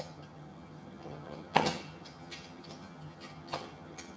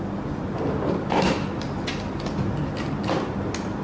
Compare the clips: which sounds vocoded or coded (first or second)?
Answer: first